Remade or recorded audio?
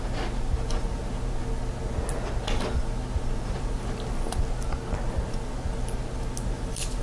recorded